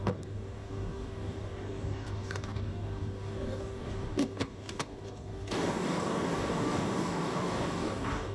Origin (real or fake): fake